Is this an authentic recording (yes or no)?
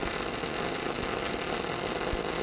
yes